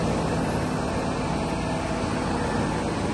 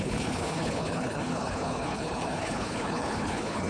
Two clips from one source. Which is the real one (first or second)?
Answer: first